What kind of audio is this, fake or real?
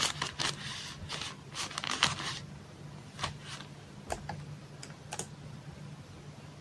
real